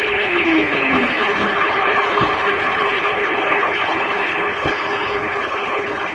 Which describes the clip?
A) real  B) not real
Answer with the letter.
B